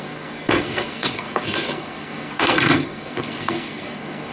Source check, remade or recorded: remade